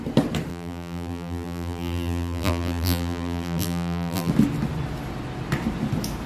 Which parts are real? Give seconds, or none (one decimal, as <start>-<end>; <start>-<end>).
0.0-0.5; 4.3-6.3